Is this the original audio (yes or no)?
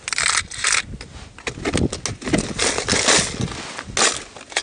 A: yes